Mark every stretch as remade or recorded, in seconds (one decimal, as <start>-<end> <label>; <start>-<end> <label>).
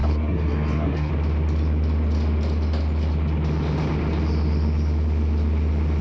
0.0-1.1 remade; 1.1-6.0 recorded